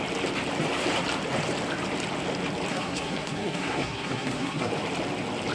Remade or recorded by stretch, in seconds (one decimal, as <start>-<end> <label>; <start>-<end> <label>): 0.0-2.7 recorded; 2.7-4.7 remade; 4.7-5.5 recorded